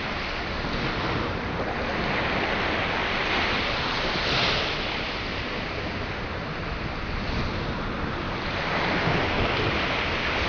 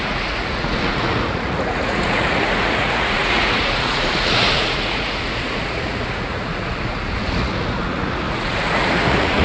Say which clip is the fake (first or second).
second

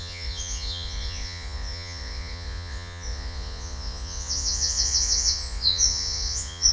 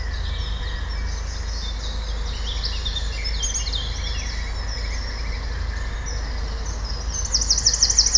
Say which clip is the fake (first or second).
first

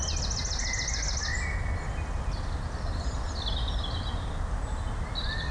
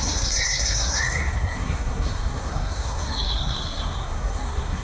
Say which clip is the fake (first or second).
second